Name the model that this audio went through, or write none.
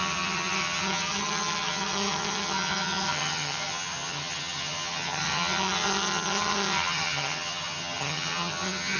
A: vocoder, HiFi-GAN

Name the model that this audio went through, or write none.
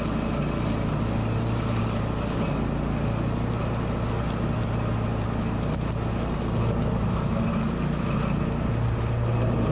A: none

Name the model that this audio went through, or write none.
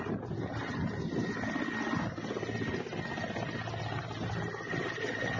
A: none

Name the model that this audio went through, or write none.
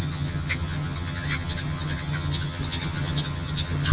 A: vocoder, HiFi-GAN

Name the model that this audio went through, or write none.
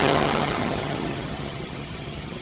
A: vocoder, HiFi-GAN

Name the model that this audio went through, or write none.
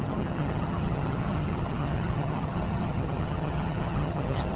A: vocoder, HiFi-GAN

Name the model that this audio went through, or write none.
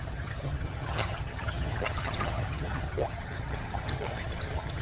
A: vocoder, HiFi-GAN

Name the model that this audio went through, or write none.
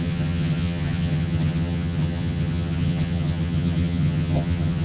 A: vocoder, HiFi-GAN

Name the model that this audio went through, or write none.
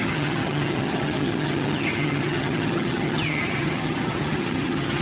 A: vocoder, HiFi-GAN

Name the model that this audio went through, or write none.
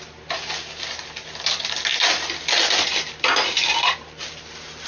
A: none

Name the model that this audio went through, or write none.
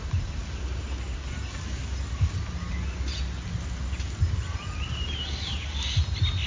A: none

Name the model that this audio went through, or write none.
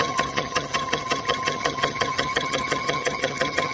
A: vocoder, HiFi-GAN